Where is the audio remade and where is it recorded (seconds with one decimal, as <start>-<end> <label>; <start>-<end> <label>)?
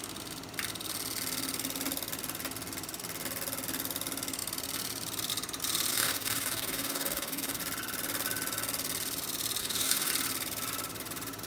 0.0-5.9 recorded; 5.9-7.6 remade; 7.6-9.6 recorded; 9.6-10.1 remade; 10.1-11.5 recorded